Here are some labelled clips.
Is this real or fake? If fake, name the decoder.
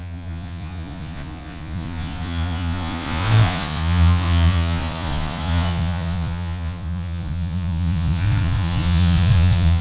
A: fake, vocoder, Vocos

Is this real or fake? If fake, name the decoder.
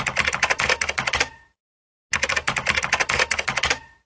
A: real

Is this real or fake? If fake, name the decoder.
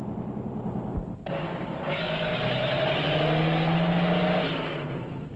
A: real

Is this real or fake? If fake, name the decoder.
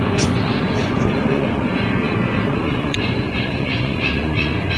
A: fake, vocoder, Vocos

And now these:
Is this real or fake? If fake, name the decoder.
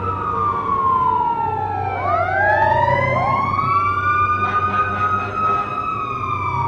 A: real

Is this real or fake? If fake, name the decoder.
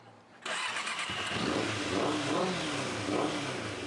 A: real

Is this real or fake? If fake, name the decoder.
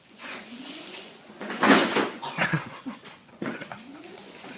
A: fake, vocoder, Vocos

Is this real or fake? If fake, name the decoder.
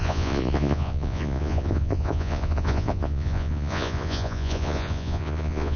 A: fake, vocoder, Vocos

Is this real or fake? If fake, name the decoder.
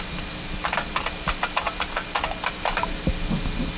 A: real